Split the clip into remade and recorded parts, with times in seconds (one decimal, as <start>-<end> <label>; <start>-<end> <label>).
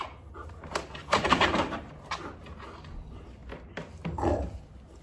0.0-1.0 recorded; 1.0-2.1 remade; 2.1-5.0 recorded